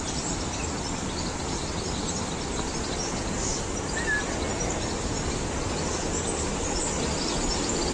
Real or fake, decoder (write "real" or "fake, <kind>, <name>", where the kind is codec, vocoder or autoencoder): real